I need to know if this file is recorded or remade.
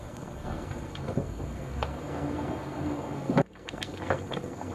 remade